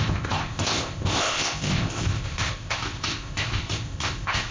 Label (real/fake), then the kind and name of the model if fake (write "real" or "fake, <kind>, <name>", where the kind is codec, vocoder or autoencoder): fake, codec, ZipCodec